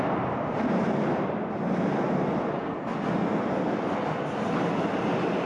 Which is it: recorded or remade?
recorded